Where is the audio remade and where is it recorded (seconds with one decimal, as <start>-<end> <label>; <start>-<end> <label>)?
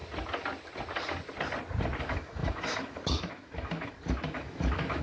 0.0-2.0 recorded; 2.0-5.0 remade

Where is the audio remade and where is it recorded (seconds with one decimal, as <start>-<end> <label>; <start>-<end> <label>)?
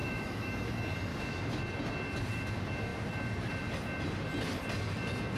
0.0-0.7 remade; 0.7-1.1 recorded; 1.1-1.6 remade; 1.6-5.4 recorded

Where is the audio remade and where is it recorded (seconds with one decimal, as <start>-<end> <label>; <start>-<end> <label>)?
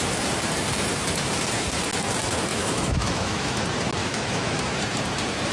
0.0-2.5 recorded; 2.5-3.6 remade; 3.6-4.0 recorded; 4.0-4.6 remade; 4.6-5.5 recorded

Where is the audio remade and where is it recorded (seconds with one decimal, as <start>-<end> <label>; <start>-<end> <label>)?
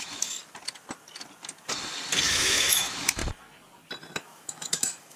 0.0-0.4 remade; 0.4-2.3 recorded; 2.3-3.2 remade; 3.2-4.2 recorded; 4.2-5.2 remade